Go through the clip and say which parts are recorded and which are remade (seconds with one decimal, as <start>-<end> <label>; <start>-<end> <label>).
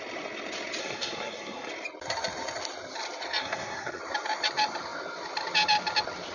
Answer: 0.0-0.8 recorded; 0.8-1.7 remade; 1.7-3.4 recorded; 3.4-4.0 remade; 4.0-6.3 recorded